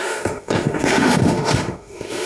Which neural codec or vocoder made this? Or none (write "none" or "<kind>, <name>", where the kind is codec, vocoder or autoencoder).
autoencoder, DAC-VAE